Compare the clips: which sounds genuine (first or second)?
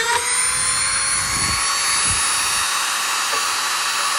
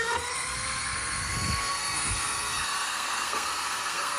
first